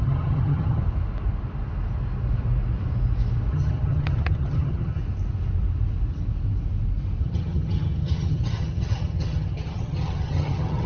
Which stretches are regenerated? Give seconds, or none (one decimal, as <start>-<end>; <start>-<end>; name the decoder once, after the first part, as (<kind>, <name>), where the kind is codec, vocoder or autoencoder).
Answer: 0.0-0.8 (vocoder, HiFi-GAN); 3.5-5.0; 7.2-10.9